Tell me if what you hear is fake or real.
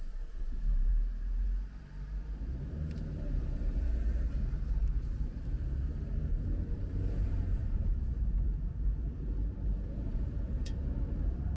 fake